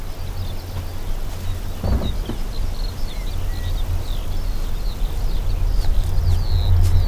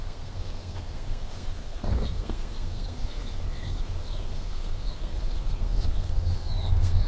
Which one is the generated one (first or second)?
second